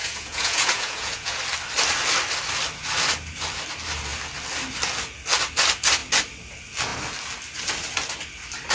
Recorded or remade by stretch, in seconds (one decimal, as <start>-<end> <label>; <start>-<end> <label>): 0.0-1.4 remade; 1.4-8.7 recorded